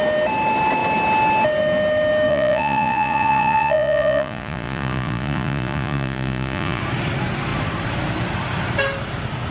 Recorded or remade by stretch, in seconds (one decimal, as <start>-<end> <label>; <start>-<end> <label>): 0.0-2.3 recorded; 2.3-6.8 remade; 6.8-9.5 recorded